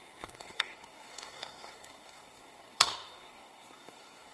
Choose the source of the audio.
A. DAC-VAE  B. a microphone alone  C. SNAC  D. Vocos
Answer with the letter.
C